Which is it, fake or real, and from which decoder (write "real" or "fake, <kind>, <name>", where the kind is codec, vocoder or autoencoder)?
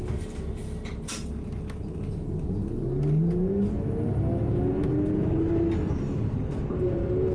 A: real